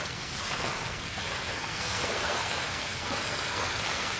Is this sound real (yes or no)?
no